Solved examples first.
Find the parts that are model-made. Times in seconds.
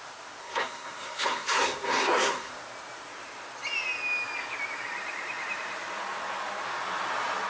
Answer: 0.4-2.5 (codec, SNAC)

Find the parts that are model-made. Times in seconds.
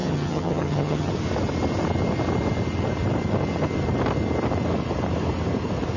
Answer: 0.0-1.1 (vocoder, HiFi-GAN)